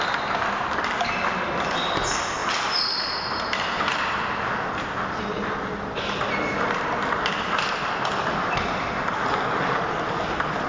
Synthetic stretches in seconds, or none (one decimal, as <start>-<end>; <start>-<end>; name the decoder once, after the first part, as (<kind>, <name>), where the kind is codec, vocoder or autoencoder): none